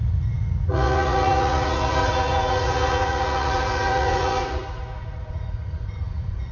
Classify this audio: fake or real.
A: fake